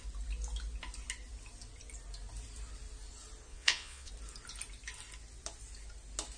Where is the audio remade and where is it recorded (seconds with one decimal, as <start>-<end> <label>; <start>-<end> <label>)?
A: 0.0-3.5 recorded; 3.5-4.1 remade; 4.1-6.4 recorded